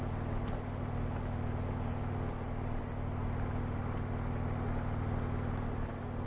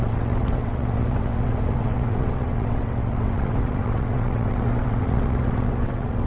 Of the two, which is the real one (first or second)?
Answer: first